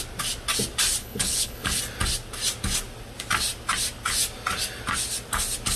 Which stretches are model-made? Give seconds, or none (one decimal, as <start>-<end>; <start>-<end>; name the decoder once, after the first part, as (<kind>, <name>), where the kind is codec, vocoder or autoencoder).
1.0-1.8 (codec, HILCodec)